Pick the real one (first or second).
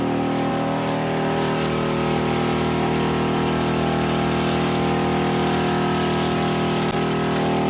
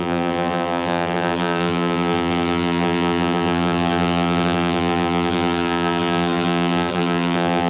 first